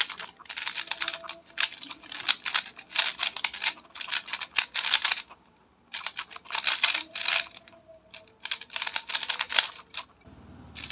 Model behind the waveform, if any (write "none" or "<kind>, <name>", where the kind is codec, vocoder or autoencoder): none